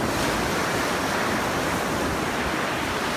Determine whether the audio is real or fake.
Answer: real